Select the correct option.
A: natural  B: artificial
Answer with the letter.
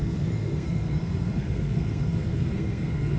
B